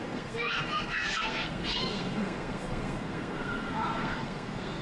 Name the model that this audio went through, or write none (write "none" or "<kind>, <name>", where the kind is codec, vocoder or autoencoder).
codec, SNAC